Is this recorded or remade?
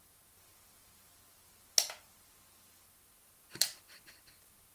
recorded